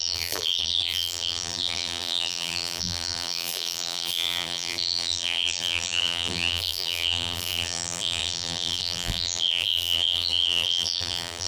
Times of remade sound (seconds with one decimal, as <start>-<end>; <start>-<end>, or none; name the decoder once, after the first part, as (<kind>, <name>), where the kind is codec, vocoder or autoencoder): 0.0-11.5 (vocoder, BigVGAN v2)